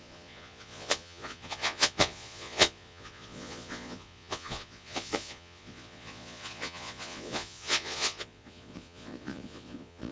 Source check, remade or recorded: remade